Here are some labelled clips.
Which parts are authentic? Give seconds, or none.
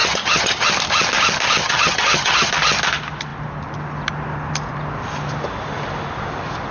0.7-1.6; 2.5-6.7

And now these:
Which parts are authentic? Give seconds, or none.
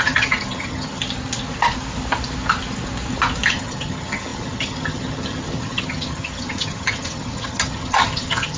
1.0-3.5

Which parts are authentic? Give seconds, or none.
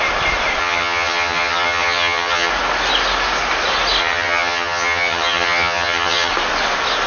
0.0-0.6; 2.5-4.0; 6.3-7.1